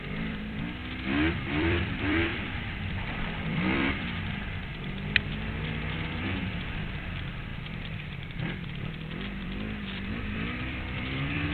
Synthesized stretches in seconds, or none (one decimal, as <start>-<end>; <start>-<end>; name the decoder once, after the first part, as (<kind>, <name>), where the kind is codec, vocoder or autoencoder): 0.0-0.8 (vocoder, BigVGAN v2); 1.3-11.5